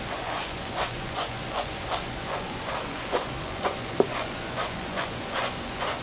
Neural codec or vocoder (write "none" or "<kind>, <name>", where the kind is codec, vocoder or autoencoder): vocoder, Vocos